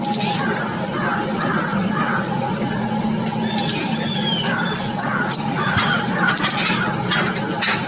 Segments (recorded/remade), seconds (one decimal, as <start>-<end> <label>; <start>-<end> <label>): 0.0-1.7 recorded; 1.7-2.4 remade; 2.4-5.0 recorded; 5.0-6.0 remade; 6.0-7.9 recorded